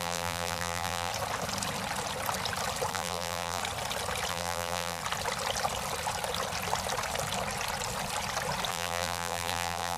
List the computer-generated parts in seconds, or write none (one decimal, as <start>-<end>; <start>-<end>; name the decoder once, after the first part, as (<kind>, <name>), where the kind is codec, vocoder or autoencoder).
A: 0.0-1.1 (vocoder, BigVGAN v2); 2.9-3.6; 4.3-5.0; 8.7-10.0